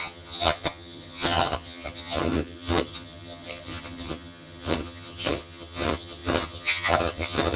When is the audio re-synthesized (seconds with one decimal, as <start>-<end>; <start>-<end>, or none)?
0.0-7.6